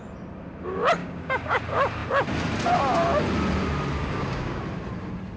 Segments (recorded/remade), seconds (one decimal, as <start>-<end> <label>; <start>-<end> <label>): 0.0-1.0 recorded; 1.0-1.6 remade; 1.6-4.0 recorded; 4.0-4.6 remade; 4.6-5.4 recorded